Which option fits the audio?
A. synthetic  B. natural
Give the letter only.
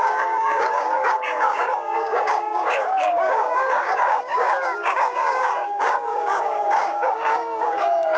A